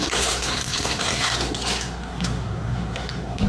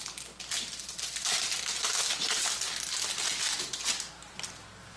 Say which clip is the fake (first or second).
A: first